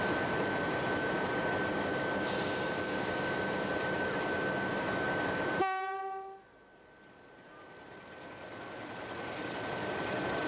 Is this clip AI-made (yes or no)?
no